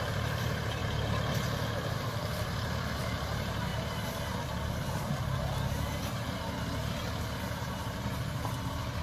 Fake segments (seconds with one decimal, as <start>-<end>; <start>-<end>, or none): 0.0-0.8; 1.9-3.7; 7.6-9.0